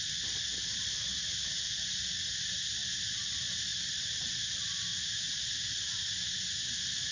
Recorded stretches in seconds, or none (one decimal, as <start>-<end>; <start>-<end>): 0.0-0.5; 1.2-3.7; 6.0-7.1